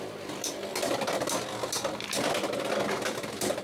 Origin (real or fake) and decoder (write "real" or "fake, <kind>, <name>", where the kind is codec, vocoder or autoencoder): real